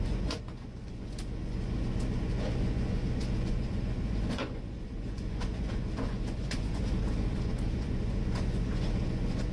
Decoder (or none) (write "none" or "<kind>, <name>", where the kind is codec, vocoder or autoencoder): vocoder, Vocos